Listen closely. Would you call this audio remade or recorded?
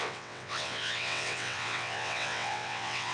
remade